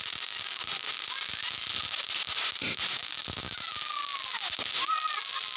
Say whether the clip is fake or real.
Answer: real